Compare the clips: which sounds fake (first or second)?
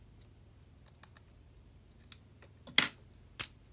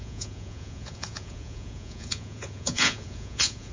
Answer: second